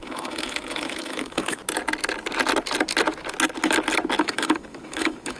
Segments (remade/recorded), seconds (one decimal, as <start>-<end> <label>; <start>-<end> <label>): 0.0-1.6 remade; 1.6-4.2 recorded; 4.2-5.4 remade